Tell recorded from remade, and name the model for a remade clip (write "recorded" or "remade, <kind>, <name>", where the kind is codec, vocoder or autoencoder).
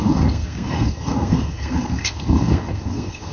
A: remade, codec, SNAC